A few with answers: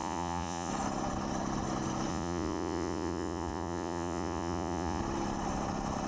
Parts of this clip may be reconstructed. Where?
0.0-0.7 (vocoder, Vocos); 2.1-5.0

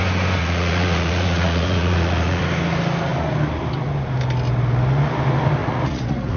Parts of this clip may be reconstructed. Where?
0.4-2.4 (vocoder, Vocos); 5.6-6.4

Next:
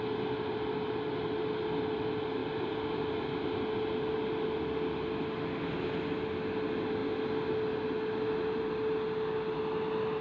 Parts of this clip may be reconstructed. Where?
none

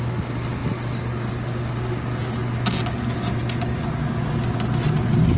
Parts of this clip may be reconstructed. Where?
none

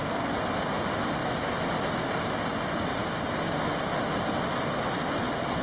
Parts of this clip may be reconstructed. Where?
none

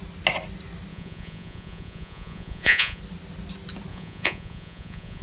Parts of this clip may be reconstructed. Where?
0.9-3.0 (vocoder, Vocos); 3.9-5.2

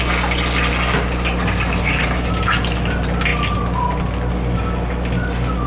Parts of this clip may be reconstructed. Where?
none